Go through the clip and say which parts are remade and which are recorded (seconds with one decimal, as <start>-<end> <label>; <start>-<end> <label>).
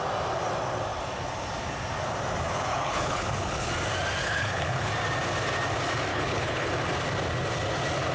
0.0-2.7 recorded; 2.7-3.7 remade; 3.7-4.2 recorded; 4.2-4.9 remade; 4.9-6.1 recorded; 6.1-6.7 remade; 6.7-8.1 recorded